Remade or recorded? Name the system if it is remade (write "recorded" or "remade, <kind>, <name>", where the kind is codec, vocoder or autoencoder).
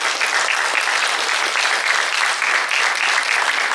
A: remade, vocoder, BigVGAN v2